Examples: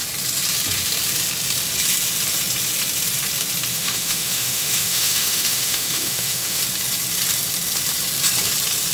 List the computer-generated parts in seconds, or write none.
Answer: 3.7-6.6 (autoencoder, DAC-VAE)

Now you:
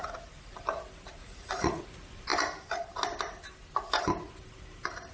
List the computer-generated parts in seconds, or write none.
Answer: 1.2-1.8 (vocoder, Vocos)

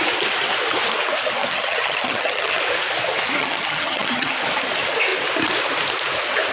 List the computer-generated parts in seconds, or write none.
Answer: 1.4-2.6 (vocoder, HiFi-GAN); 3.4-4.3

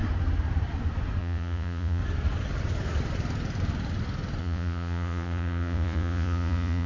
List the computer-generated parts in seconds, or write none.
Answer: 1.2-2.0 (vocoder, Vocos); 4.4-6.9

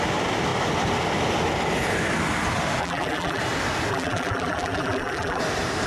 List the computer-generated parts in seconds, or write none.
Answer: 2.8-3.4 (vocoder, BigVGAN v2); 3.9-5.4

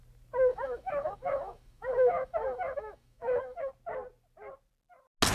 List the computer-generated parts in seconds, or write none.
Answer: 0.5-3.7 (autoencoder, DAC-VAE)

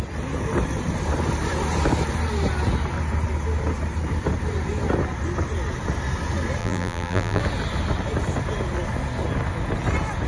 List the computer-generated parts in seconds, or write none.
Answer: 6.6-7.4 (vocoder, BigVGAN v2)